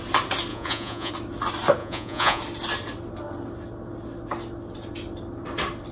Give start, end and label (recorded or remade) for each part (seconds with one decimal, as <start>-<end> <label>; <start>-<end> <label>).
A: 0.0-0.5 recorded; 0.5-1.1 remade; 1.1-1.8 recorded; 1.8-2.4 remade; 2.4-5.9 recorded